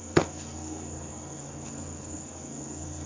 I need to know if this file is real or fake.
fake